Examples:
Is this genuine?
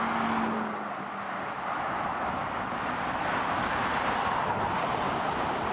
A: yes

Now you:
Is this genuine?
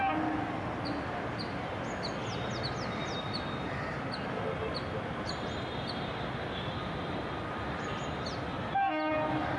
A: yes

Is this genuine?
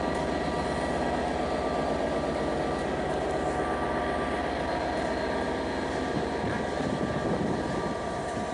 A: yes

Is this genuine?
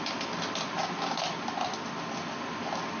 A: yes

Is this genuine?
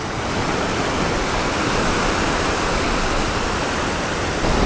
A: yes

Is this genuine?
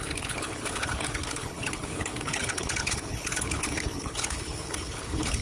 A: no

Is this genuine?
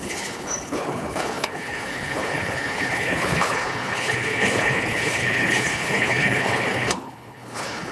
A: no